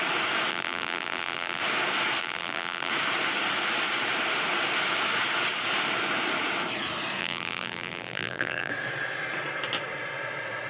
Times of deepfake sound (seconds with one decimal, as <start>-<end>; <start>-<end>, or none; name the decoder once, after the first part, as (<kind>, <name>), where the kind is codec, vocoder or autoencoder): 0.5-1.6 (vocoder, BigVGAN v2); 2.2-2.9; 7.2-8.7